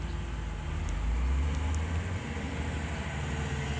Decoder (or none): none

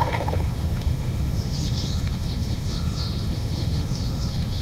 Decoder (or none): autoencoder, DAC-VAE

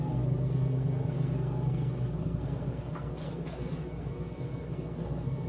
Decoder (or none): codec, SNAC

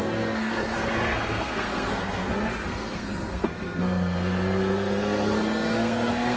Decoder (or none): codec, SNAC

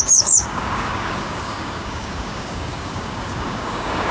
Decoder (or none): codec, DAC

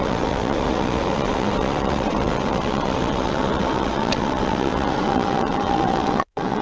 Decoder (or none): vocoder, WaveNeXt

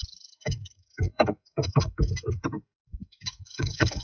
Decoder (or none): codec, SNAC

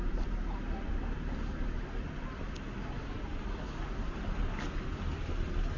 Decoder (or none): none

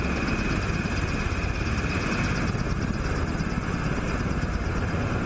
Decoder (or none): none